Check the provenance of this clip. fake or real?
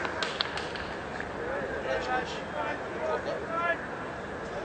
real